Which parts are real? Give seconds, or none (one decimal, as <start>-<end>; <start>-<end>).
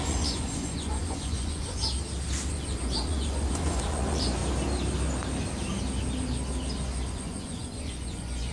1.8-2.5; 4.4-7.1